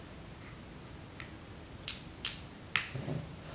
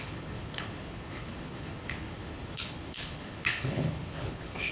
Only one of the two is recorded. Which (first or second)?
first